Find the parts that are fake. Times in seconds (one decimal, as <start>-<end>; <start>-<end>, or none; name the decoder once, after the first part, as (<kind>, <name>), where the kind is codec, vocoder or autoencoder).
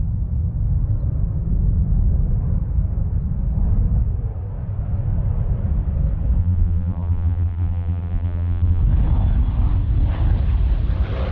6.4-8.8 (vocoder, BigVGAN v2)